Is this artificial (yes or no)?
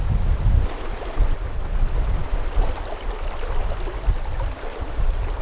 no